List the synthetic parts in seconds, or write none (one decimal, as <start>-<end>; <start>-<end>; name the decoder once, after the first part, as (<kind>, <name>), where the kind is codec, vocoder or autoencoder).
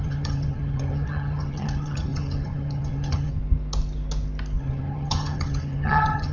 0.0-3.3 (vocoder, HiFi-GAN); 4.6-6.3